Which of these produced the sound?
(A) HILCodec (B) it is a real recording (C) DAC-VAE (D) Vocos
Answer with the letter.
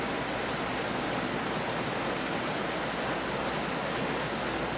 B